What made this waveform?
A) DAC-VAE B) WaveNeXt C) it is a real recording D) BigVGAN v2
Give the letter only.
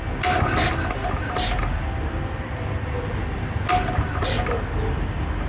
C